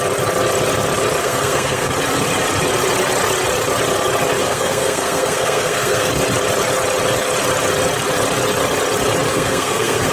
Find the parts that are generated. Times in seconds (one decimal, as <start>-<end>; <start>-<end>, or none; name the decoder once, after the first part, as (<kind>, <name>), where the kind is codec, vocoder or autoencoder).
1.2-1.9 (codec, SNAC); 4.4-6.1; 9.3-10.1